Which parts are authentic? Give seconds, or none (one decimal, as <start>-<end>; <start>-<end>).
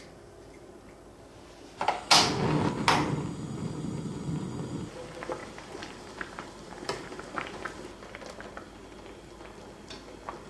0.0-5.4; 7.5-10.5